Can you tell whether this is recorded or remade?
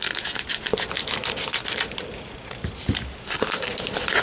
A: recorded